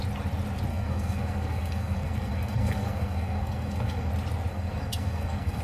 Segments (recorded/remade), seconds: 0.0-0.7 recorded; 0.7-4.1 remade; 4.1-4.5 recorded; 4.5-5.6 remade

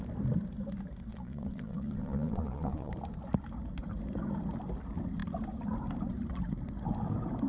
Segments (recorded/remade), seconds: 0.0-1.1 recorded; 1.1-2.9 remade; 2.9-7.5 recorded

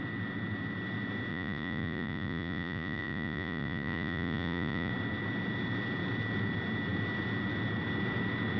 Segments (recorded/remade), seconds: 0.0-1.3 recorded; 1.3-4.9 remade; 4.9-8.6 recorded

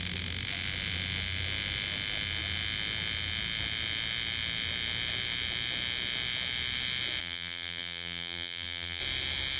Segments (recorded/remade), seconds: 0.0-7.2 recorded; 7.2-9.0 remade; 9.0-9.6 recorded